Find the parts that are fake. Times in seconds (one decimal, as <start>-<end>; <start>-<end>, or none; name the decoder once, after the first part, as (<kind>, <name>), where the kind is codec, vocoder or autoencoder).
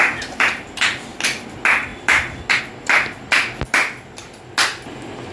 none